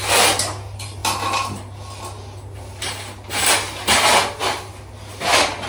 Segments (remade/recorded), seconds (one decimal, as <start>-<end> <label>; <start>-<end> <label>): 0.0-5.7 recorded